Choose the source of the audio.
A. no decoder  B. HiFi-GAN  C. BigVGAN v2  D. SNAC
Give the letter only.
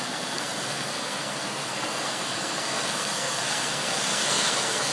D